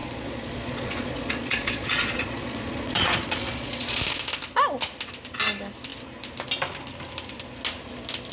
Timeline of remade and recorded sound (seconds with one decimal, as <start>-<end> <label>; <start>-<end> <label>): 0.0-4.0 remade; 4.0-8.3 recorded